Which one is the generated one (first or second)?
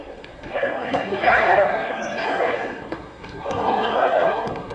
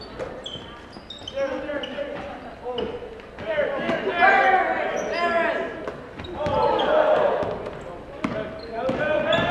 first